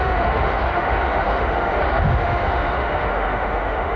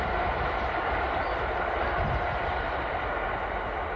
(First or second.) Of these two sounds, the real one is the second